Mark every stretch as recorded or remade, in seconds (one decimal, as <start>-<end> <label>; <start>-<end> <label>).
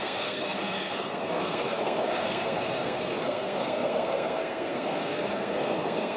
0.0-6.2 remade